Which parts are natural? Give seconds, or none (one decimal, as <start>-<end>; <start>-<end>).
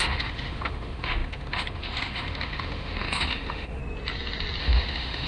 3.8-4.6